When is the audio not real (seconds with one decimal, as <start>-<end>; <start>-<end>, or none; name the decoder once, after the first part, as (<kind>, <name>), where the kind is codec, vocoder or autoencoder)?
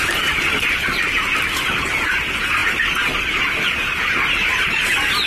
none